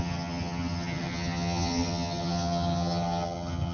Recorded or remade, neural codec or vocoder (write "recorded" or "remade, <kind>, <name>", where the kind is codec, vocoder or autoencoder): remade, vocoder, HiFi-GAN